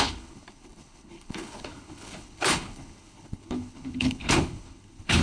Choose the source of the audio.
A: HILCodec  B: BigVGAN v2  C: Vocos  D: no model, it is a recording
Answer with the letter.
A